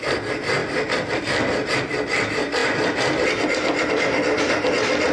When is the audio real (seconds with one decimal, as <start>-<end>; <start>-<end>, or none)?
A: 0.0-5.1